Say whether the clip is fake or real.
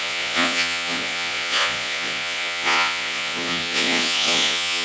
fake